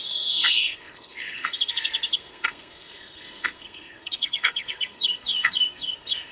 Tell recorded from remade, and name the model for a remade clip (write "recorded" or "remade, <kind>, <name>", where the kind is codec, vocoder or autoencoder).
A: remade, codec, SNAC